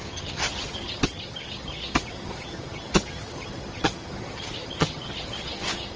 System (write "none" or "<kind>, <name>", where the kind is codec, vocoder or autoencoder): vocoder, HiFi-GAN